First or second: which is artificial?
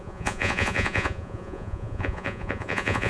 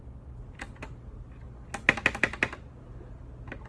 first